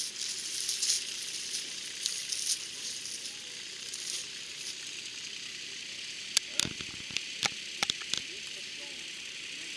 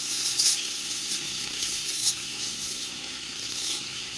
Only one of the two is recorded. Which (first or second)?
first